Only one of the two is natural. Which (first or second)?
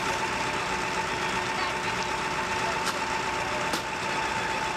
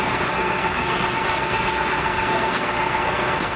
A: first